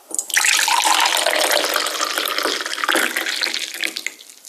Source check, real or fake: real